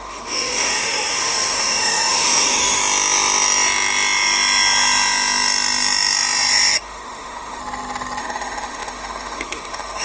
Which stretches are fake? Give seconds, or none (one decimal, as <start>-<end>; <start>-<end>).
0.0-2.8; 6.8-7.6; 8.2-10.0